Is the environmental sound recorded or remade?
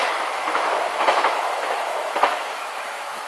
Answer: remade